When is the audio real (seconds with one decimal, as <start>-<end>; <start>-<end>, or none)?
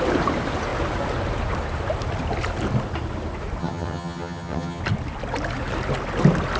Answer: 0.0-3.6; 4.8-6.6